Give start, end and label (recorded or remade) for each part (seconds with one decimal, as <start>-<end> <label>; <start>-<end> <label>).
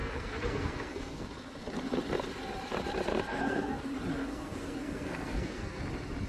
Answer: 0.0-1.3 remade; 1.3-3.3 recorded; 3.3-3.8 remade; 3.8-4.2 recorded; 4.2-5.8 remade; 5.8-6.3 recorded